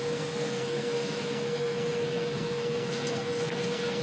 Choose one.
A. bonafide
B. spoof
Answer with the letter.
B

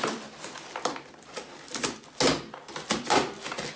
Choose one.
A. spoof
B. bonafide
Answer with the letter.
B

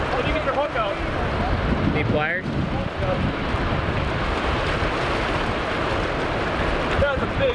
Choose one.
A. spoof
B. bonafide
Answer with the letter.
B